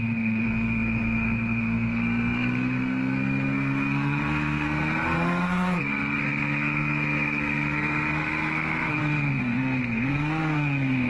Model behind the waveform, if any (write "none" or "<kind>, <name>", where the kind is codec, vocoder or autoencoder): codec, SNAC